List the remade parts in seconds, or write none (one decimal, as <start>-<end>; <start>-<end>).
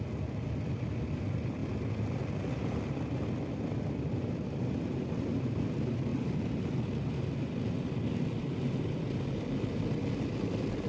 none